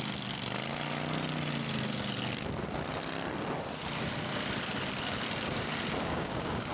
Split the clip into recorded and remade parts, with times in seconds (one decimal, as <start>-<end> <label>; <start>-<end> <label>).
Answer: 0.0-6.0 recorded; 6.0-6.7 remade